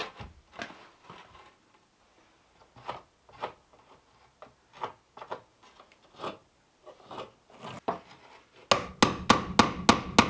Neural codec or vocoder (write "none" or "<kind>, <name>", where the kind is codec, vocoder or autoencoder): none